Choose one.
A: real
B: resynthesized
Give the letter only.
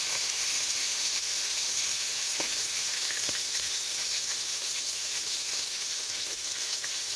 B